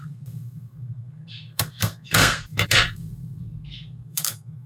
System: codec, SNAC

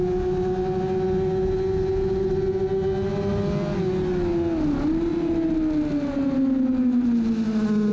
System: none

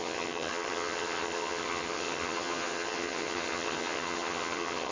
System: vocoder, HiFi-GAN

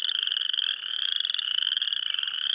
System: none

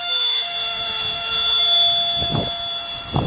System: autoencoder, DAC-VAE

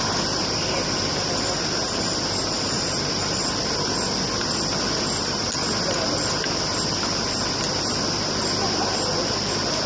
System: none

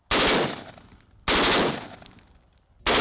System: none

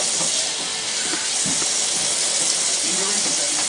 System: none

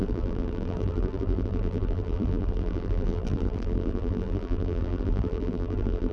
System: vocoder, BigVGAN v2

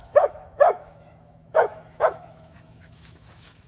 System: autoencoder, DAC-VAE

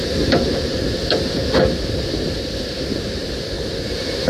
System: none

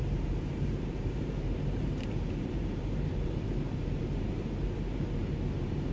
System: vocoder, BigVGAN v2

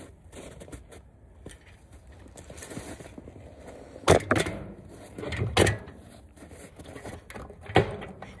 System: none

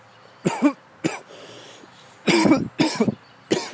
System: none